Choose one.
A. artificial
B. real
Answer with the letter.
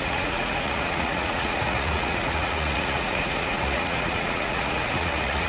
A